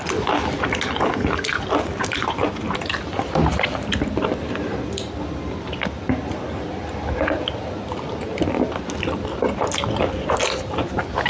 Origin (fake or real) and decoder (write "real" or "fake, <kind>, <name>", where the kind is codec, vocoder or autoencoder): real